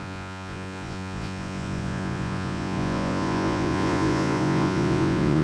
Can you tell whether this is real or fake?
fake